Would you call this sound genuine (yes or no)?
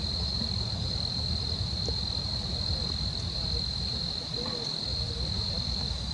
yes